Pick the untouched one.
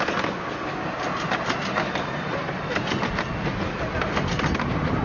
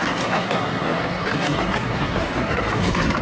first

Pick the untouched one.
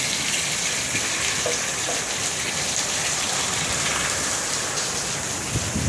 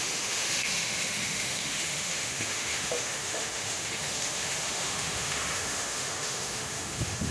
first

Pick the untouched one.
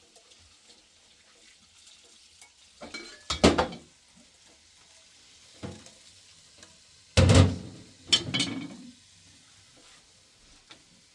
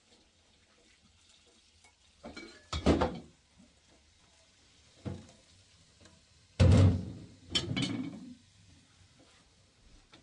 first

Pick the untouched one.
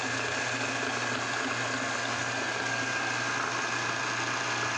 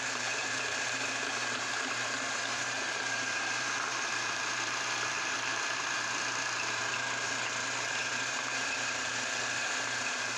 first